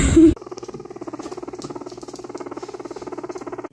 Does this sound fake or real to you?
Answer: real